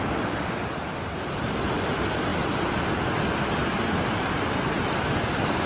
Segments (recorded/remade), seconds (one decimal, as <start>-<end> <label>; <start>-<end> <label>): 0.0-5.7 recorded